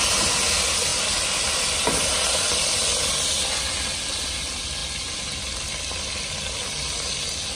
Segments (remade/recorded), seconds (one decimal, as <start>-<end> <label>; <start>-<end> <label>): 0.0-7.6 recorded